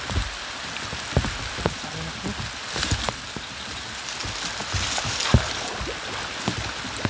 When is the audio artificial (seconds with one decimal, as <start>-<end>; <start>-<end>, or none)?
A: none